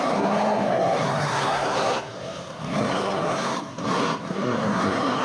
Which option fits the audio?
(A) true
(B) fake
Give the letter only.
B